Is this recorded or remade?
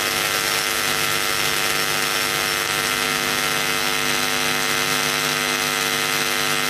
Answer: recorded